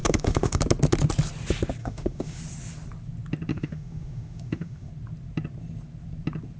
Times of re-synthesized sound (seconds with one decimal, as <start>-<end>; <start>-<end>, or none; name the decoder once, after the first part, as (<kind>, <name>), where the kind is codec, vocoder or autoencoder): 0.0-0.6 (autoencoder, DAC-VAE); 1.8-2.4; 3.5-4.9